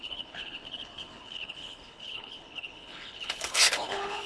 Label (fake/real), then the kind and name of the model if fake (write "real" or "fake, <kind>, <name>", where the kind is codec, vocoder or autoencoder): fake, codec, HILCodec